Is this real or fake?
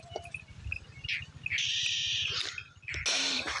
real